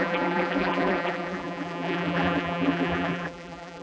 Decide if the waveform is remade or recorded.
remade